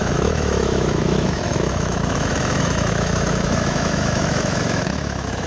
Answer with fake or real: fake